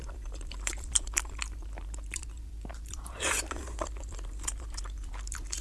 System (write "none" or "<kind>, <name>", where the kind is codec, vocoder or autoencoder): vocoder, BigVGAN v2